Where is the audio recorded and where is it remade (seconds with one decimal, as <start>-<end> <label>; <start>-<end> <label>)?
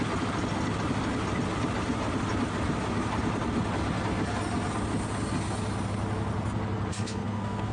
0.0-6.9 recorded; 6.9-7.7 remade